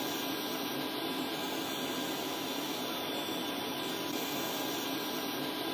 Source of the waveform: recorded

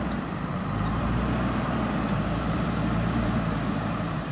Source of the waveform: remade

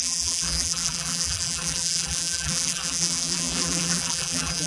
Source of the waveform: remade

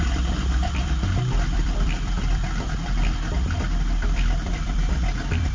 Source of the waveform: remade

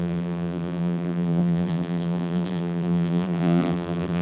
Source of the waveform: remade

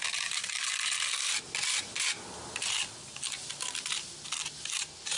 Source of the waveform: remade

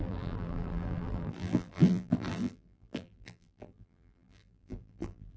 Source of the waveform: remade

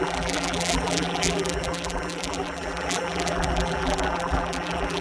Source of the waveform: remade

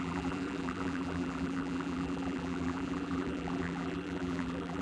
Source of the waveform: remade